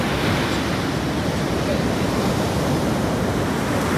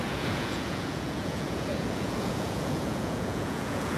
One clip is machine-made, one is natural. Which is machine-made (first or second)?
second